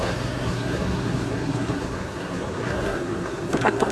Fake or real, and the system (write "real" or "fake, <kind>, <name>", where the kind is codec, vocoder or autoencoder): fake, codec, SNAC